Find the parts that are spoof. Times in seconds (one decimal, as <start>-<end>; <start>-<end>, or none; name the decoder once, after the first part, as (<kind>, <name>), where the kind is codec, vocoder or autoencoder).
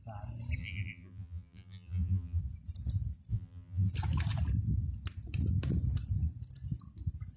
0.6-2.4 (vocoder, BigVGAN v2); 3.3-3.9